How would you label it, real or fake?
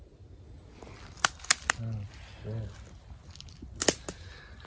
real